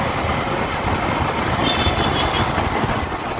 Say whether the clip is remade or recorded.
recorded